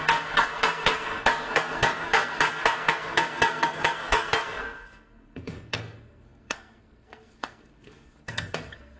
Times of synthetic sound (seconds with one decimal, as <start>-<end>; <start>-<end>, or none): 0.0-9.0